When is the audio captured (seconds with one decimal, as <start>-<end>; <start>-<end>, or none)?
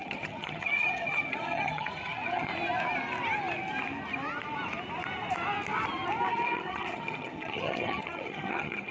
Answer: 2.5-6.3